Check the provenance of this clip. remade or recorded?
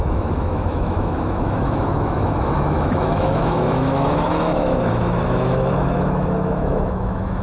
remade